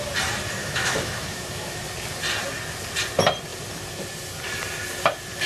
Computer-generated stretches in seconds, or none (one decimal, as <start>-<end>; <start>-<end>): 0.6-1.8